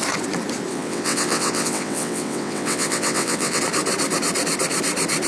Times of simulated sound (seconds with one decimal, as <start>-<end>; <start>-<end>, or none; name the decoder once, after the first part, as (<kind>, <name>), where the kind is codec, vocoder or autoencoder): 0.7-3.6 (vocoder, WaveNeXt)